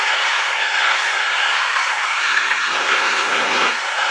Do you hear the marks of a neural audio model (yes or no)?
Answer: yes